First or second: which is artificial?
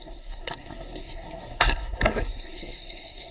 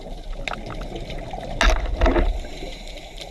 first